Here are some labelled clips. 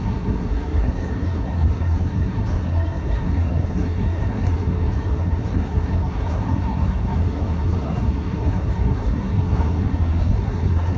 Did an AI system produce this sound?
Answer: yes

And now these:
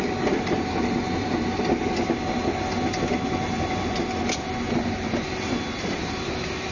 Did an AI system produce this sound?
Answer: no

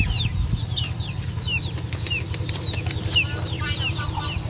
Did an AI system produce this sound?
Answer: yes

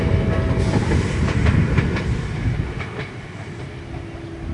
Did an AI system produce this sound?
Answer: no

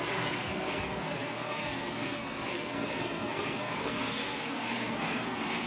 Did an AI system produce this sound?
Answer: yes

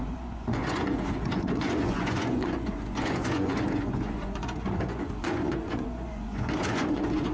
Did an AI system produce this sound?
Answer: yes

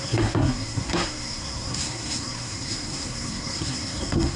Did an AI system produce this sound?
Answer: yes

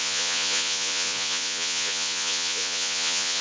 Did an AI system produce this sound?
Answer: yes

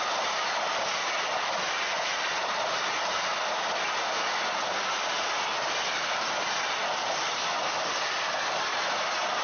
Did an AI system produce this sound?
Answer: no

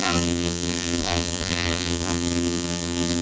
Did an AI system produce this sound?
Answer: yes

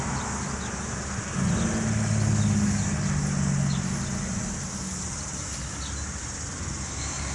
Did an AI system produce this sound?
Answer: no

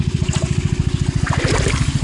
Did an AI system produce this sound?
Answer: no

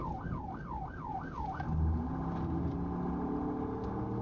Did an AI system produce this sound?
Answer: no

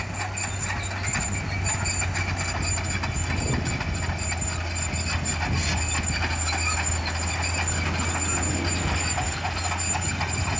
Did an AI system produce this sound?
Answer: no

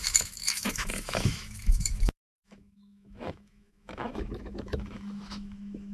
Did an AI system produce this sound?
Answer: yes